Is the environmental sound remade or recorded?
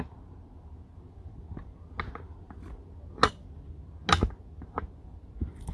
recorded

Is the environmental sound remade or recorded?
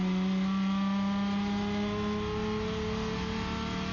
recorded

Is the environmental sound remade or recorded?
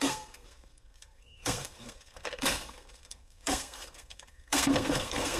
remade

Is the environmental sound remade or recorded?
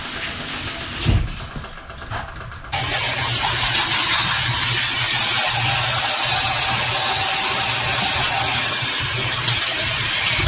recorded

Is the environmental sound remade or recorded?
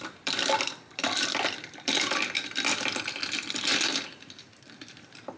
remade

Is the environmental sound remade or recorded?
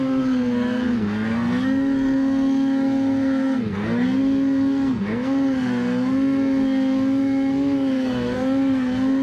remade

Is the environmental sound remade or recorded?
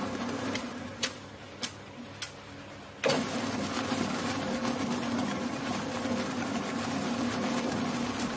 recorded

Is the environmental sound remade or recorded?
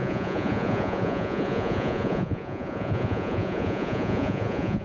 remade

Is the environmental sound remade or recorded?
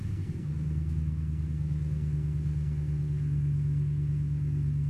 remade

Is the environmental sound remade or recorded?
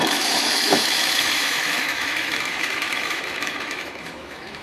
remade